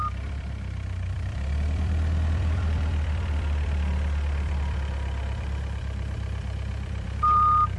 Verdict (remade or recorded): remade